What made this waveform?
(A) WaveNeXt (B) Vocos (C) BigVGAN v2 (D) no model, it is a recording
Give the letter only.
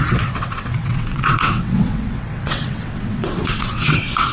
A